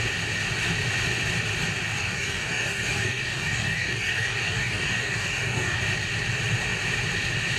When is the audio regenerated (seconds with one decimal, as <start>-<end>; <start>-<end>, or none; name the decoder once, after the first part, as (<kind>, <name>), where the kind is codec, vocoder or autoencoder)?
2.0-5.8 (codec, DAC)

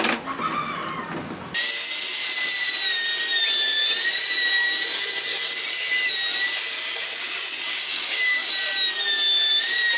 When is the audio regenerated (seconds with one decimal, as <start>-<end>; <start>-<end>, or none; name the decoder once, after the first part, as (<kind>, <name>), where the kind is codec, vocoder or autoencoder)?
7.7-8.5 (codec, DAC)

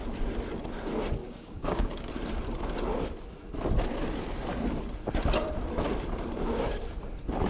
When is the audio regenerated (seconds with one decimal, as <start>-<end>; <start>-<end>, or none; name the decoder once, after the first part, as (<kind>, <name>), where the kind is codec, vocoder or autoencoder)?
1.2-2.1 (codec, DAC)

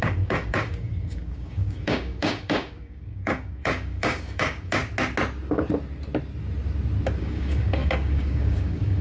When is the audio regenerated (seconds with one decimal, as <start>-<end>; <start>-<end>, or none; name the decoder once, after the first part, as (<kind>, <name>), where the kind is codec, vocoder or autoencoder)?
0.0-4.8 (codec, DAC); 7.2-9.0